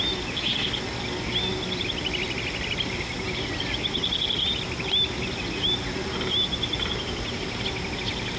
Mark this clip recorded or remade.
recorded